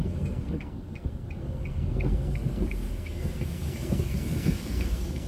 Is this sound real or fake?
fake